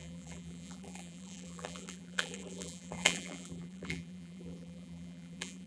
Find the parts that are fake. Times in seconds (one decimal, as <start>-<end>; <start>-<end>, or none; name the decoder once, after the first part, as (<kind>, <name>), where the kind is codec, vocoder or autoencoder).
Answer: 0.0-5.7 (vocoder, BigVGAN v2)